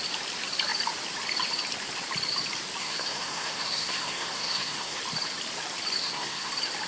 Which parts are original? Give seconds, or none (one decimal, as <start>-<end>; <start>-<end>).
0.0-2.8; 5.0-6.0; 6.5-6.9